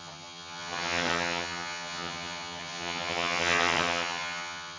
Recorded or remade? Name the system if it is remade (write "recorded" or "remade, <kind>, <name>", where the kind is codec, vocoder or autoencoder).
remade, vocoder, HiFi-GAN